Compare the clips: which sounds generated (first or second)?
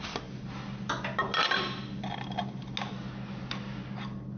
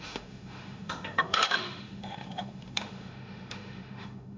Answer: second